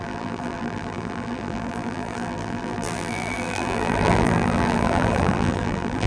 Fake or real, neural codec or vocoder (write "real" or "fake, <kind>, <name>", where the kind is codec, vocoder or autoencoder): fake, vocoder, BigVGAN v2